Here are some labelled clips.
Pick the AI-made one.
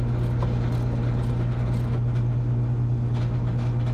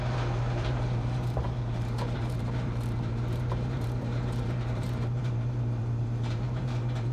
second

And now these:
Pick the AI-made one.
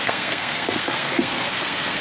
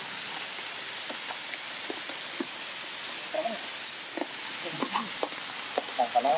first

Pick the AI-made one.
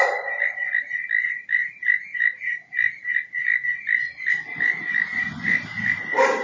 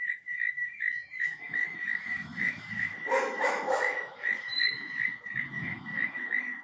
second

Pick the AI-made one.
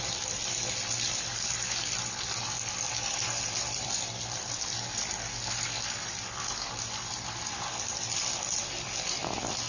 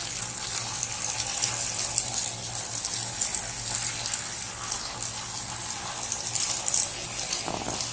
first